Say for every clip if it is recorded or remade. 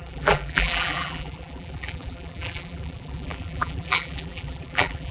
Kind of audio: remade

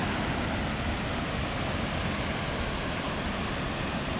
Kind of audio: recorded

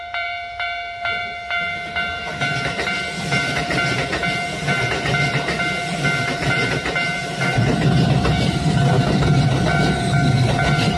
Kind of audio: remade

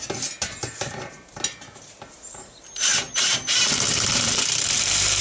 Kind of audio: remade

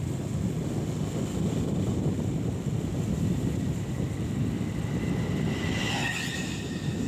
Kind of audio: recorded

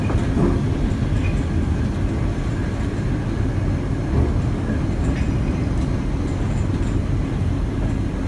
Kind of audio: recorded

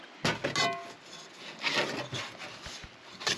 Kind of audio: recorded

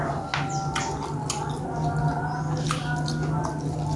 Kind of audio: recorded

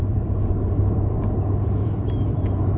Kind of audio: remade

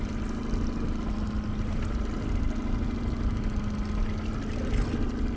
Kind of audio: recorded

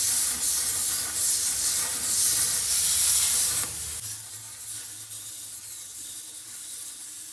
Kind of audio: recorded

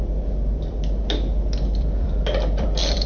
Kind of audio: remade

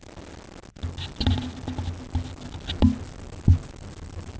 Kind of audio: recorded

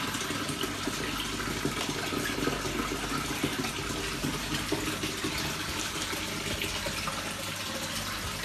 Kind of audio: recorded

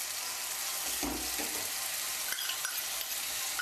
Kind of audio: recorded